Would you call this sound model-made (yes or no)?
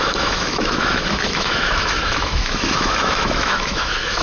yes